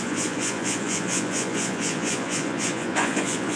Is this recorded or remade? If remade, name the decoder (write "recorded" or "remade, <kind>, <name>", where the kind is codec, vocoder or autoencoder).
remade, vocoder, Vocos